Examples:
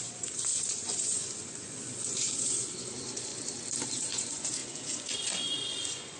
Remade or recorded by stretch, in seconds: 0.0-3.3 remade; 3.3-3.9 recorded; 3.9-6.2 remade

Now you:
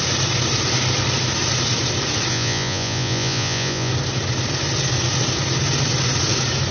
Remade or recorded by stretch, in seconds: 0.0-2.3 recorded; 2.3-3.9 remade; 3.9-6.7 recorded

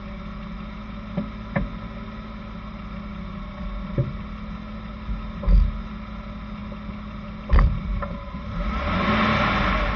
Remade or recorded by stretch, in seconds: 0.0-10.0 recorded

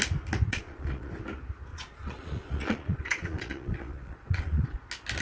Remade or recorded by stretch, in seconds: 0.0-0.5 recorded; 0.5-1.1 remade; 1.1-1.7 recorded; 1.7-4.8 remade; 4.8-5.2 recorded